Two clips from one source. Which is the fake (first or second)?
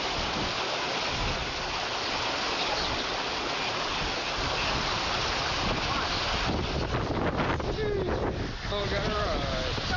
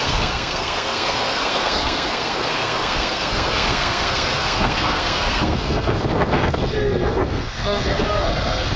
second